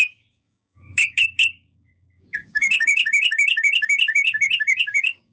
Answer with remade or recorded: remade